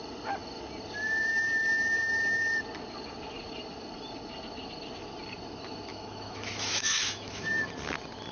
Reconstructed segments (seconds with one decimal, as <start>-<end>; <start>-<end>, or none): 5.9-7.6